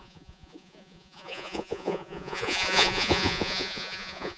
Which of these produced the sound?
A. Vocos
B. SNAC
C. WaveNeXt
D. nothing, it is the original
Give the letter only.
A